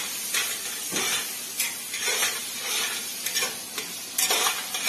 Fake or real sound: real